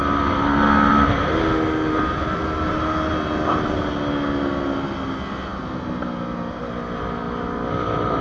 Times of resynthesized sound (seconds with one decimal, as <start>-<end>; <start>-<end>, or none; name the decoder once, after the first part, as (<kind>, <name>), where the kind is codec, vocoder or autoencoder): none

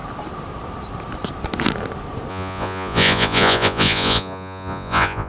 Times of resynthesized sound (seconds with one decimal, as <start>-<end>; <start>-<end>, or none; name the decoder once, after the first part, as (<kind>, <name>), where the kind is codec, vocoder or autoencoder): 2.3-5.3 (vocoder, Vocos)

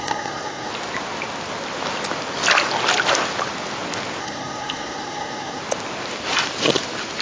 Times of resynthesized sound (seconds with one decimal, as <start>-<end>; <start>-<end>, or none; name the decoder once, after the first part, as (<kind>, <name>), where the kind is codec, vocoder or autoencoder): 0.0-0.7 (codec, SNAC); 4.2-5.6

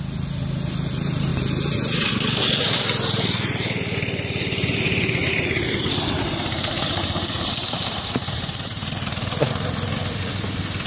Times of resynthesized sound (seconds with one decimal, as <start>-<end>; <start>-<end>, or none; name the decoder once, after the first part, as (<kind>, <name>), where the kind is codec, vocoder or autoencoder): 5.2-9.5 (vocoder, BigVGAN v2)

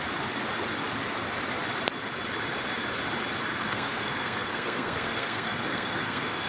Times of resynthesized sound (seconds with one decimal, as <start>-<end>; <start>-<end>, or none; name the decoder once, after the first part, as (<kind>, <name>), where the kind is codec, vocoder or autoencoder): 3.5-6.5 (codec, SNAC)